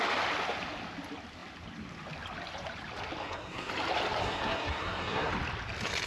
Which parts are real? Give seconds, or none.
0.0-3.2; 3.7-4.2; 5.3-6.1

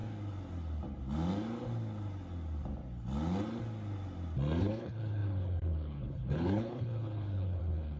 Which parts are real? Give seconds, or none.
0.0-4.6

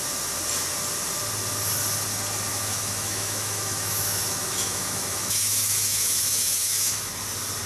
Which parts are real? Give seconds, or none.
0.0-2.5; 7.1-7.7

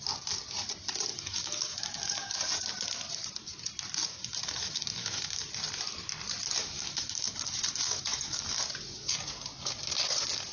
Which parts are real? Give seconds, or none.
0.0-1.1; 2.4-4.1; 5.5-6.6; 8.6-10.5

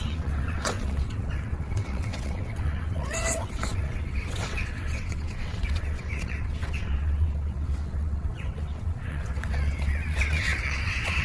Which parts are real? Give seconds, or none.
none

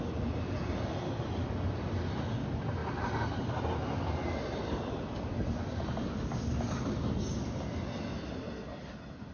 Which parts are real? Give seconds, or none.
0.0-9.3

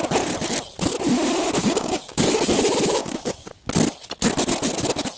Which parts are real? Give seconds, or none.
0.0-1.6; 2.3-3.0; 3.7-5.2

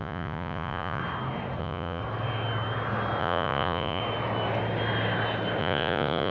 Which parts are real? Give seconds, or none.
1.0-1.6; 2.0-3.2; 4.0-5.6